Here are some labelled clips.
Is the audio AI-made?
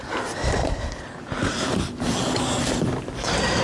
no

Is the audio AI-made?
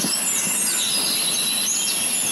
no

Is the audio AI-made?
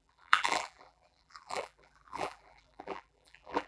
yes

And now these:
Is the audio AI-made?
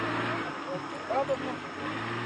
yes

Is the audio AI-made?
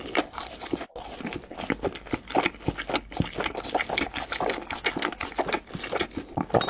no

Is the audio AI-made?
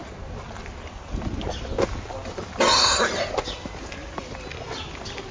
no